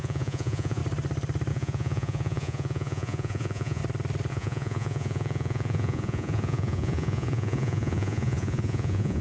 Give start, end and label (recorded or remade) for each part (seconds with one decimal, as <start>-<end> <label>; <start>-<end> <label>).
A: 0.0-0.8 remade; 0.8-1.5 recorded; 1.5-3.8 remade; 3.8-4.3 recorded; 4.3-9.2 remade